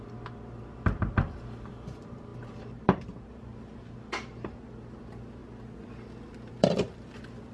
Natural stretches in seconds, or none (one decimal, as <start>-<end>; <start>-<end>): 5.4-6.5